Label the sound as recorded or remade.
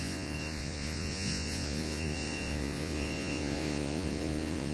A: remade